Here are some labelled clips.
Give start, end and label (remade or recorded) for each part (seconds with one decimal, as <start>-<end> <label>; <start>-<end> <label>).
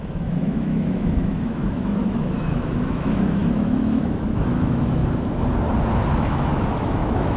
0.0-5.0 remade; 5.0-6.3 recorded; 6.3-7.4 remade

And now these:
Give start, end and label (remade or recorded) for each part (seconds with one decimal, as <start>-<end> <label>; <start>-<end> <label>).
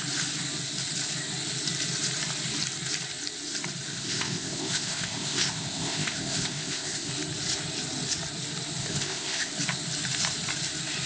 0.0-3.9 recorded; 3.9-7.1 remade; 7.1-8.8 recorded; 8.8-9.5 remade; 9.5-11.1 recorded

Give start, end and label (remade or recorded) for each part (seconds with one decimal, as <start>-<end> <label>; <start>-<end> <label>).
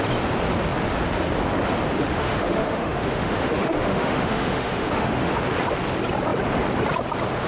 0.0-2.1 recorded; 2.1-5.4 remade; 5.4-7.5 recorded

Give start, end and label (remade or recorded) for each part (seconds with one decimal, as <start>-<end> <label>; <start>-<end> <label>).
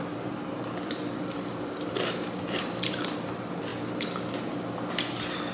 0.0-3.7 remade; 3.7-5.5 recorded